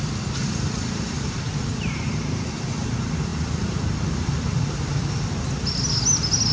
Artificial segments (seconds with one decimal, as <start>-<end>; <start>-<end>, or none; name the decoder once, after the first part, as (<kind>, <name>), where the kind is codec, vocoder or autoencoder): 0.4-2.9 (vocoder, BigVGAN v2)